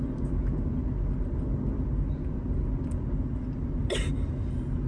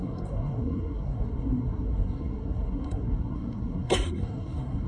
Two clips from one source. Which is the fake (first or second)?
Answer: second